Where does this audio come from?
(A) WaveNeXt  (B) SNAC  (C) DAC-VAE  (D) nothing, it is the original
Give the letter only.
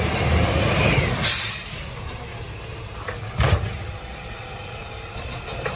D